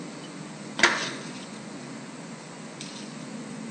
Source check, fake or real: fake